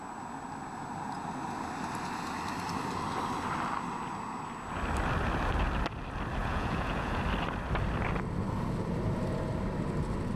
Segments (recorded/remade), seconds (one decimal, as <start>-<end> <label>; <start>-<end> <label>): 0.0-6.4 recorded; 6.4-7.2 remade; 7.2-10.4 recorded